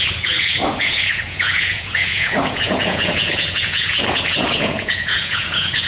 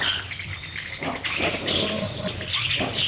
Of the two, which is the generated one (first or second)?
first